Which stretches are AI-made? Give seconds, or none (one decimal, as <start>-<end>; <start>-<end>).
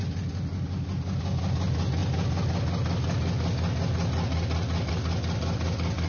none